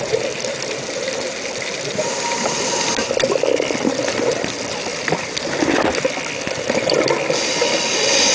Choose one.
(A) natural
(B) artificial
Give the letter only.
A